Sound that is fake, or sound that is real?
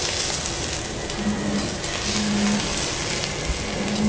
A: real